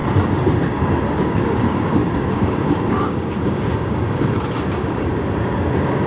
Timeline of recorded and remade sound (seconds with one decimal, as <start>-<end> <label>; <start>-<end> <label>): 0.0-1.2 recorded; 1.2-6.1 remade